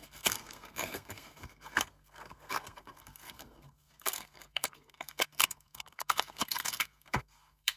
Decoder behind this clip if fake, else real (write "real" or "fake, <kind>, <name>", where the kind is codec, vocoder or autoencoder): fake, codec, SNAC